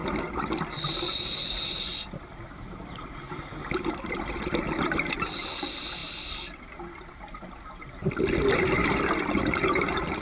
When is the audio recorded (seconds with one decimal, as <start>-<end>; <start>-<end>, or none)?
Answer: 0.0-10.2

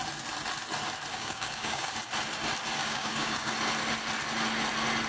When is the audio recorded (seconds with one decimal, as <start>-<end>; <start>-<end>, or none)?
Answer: 0.0-1.1; 1.9-2.8; 3.5-5.1

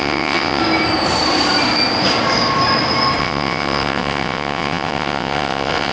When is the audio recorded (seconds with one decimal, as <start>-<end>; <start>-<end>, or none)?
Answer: 0.6-3.2